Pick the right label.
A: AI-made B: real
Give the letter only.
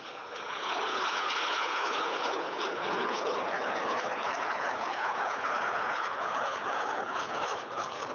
A